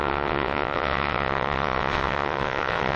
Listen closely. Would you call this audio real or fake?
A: fake